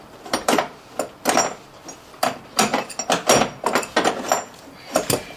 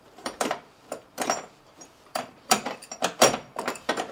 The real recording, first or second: first